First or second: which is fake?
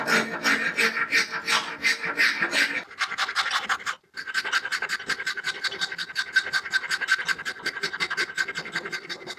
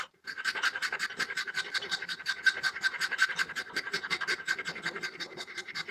second